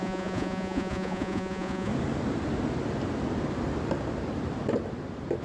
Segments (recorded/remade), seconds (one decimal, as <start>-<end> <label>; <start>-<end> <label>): 0.0-1.9 remade; 1.9-5.4 recorded